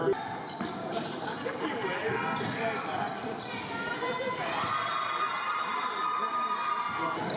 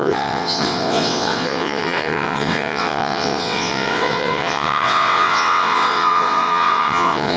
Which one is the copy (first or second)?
second